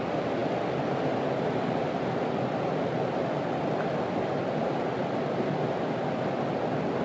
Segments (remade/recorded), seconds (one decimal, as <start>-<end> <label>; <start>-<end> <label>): 0.0-7.0 recorded